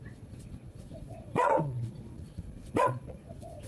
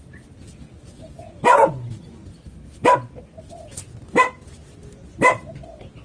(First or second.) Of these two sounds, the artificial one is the first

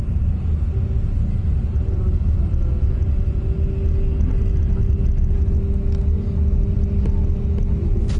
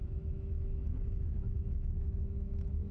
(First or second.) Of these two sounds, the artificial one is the second